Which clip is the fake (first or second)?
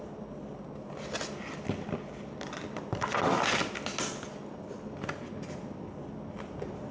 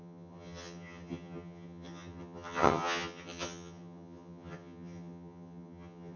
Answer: second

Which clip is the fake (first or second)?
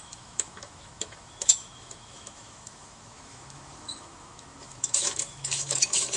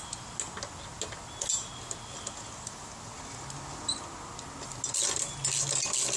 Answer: first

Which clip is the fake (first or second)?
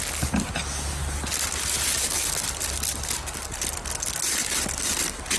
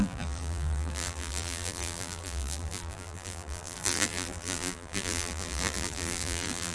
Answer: second